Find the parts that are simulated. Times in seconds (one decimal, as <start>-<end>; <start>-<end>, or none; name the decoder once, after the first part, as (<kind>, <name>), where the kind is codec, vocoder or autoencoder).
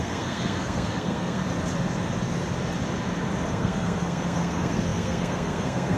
0.0-1.4 (codec, SNAC); 3.5-6.0